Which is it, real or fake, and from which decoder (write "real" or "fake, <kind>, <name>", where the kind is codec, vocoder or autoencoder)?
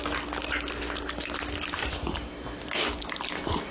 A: real